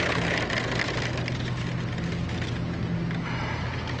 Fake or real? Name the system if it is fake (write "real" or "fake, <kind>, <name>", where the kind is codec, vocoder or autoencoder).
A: real